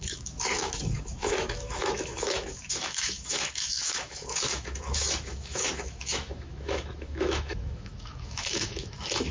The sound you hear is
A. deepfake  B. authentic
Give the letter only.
A